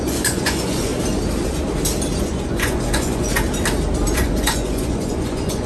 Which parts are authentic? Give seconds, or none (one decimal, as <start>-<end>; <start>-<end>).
0.9-2.2; 3.3-4.1

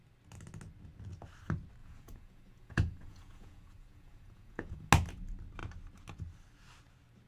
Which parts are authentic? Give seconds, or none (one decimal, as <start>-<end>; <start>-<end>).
0.0-1.8; 4.9-7.3

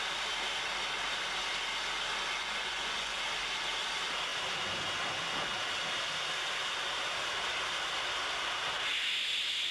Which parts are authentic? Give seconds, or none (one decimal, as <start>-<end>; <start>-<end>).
0.0-2.4; 3.2-9.7

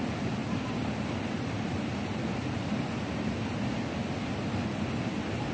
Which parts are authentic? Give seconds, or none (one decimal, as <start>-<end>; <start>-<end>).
0.0-5.5

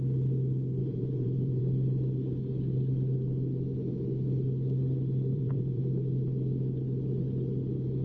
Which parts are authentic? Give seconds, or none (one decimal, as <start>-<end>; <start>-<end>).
0.0-0.8; 1.6-5.3; 5.8-8.0